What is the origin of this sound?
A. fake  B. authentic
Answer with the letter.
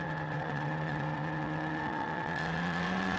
A